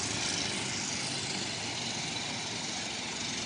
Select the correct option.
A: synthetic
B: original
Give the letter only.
B